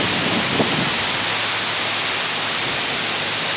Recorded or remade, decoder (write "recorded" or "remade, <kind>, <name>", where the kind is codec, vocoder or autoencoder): recorded